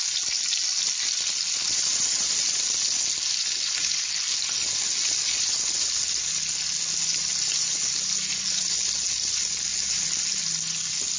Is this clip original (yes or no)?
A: yes